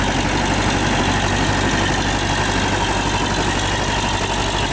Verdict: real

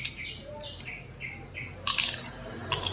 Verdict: real